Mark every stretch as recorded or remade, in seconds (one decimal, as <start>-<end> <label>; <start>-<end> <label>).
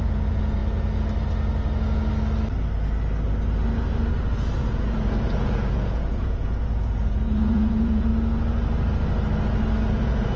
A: 0.0-0.6 remade; 0.6-4.6 recorded; 4.6-8.1 remade; 8.1-9.9 recorded; 9.9-10.4 remade